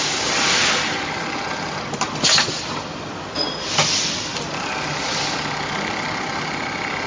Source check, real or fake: real